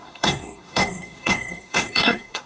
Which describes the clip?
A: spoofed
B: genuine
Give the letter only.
A